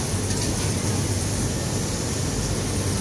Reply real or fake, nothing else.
real